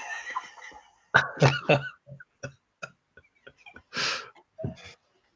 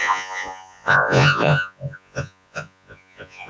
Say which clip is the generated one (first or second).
second